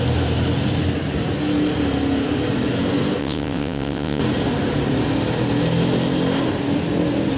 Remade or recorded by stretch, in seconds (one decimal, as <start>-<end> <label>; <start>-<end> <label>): 0.0-3.2 recorded; 3.2-4.2 remade; 4.2-7.4 recorded